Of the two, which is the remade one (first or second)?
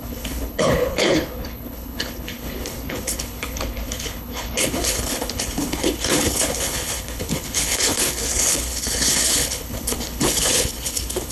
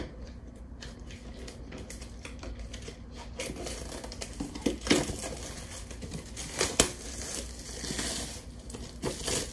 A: first